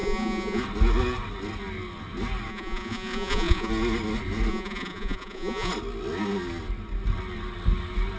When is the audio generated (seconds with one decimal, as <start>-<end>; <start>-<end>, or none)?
0.0-0.6; 2.5-3.7; 4.5-5.7